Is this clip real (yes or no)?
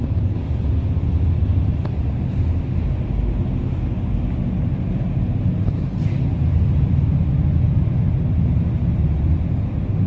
yes